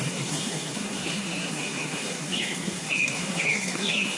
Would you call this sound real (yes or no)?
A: no